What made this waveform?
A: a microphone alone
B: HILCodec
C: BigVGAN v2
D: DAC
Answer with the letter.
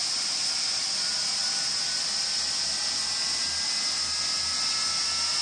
A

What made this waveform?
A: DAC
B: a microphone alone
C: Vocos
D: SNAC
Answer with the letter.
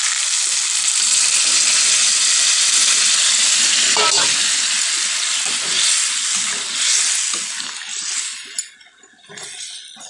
B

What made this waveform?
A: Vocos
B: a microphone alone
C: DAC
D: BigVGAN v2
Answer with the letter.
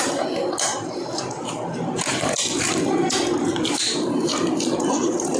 D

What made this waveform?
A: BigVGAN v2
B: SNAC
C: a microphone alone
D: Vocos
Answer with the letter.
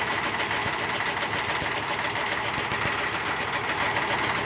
C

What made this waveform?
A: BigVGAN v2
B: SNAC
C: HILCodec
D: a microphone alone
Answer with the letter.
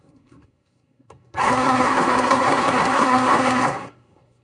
B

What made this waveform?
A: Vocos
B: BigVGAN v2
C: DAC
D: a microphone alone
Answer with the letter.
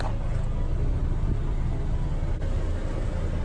D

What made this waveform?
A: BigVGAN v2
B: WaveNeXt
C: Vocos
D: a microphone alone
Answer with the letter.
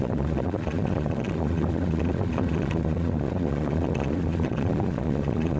C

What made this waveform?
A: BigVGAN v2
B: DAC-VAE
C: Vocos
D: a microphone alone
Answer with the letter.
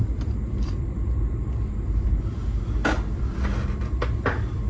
A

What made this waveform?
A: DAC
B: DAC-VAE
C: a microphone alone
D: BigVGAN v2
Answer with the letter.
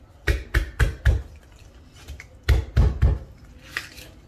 C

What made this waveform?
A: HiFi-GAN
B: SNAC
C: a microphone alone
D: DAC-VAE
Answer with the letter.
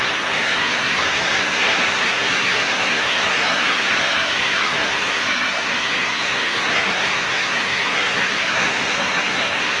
B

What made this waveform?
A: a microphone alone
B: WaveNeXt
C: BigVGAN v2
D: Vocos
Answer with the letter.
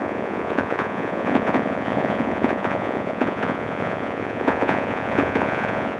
D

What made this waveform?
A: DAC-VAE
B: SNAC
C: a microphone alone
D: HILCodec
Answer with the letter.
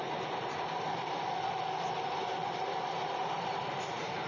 C